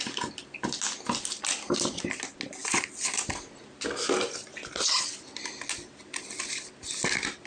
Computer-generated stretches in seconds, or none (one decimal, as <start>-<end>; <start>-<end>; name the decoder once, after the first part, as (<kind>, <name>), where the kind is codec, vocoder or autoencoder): none